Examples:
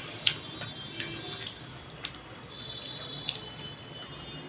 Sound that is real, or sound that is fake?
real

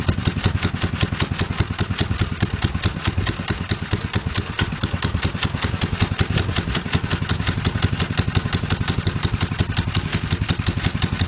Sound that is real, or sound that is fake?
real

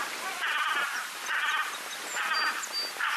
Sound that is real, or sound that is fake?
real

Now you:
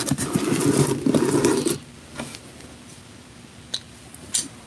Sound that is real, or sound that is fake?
real